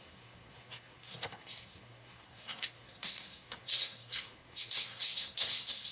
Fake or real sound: fake